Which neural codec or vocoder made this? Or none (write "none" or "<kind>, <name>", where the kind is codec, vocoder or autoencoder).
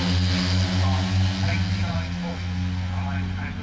none